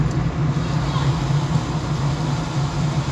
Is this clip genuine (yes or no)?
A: yes